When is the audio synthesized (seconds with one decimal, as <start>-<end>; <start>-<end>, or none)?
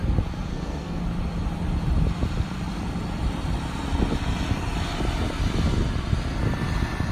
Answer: 0.5-1.0